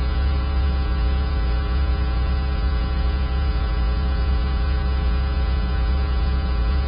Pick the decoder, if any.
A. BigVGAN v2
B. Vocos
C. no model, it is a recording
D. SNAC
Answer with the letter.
B